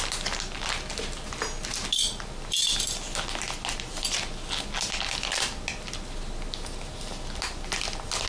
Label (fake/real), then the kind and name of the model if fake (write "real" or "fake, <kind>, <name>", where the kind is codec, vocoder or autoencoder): real